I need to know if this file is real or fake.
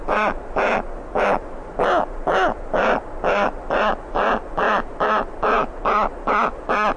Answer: real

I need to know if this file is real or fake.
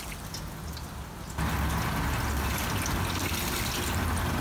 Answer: real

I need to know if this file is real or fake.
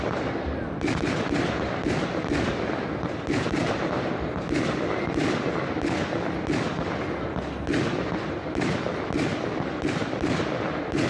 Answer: real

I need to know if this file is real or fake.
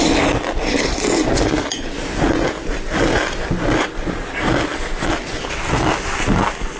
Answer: real